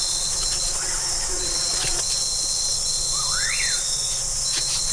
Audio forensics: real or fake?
fake